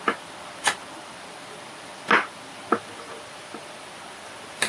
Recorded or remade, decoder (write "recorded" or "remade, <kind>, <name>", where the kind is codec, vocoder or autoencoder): remade, vocoder, BigVGAN v2